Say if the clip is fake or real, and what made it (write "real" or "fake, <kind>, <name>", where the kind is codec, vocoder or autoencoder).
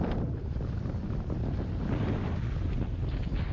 real